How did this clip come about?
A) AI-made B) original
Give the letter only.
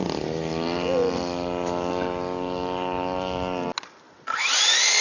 B